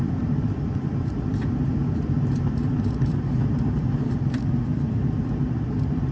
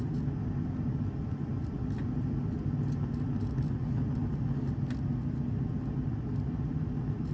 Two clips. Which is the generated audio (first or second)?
first